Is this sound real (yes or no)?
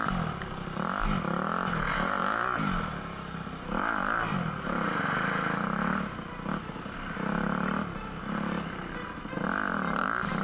yes